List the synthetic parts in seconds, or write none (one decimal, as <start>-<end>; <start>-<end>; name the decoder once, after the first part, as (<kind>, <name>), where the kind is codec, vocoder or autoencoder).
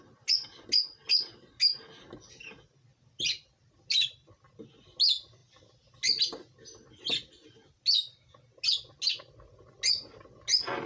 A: none